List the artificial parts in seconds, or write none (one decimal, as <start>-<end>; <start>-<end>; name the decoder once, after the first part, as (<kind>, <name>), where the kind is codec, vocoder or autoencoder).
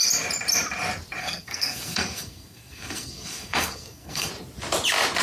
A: 1.2-4.3 (codec, SNAC)